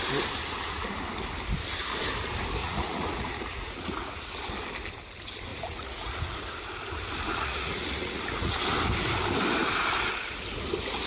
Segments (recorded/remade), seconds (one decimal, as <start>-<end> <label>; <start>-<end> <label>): 0.0-2.6 recorded; 2.6-4.3 remade; 4.3-5.5 recorded; 5.5-6.2 remade; 6.2-7.3 recorded; 7.3-8.6 remade; 8.6-11.1 recorded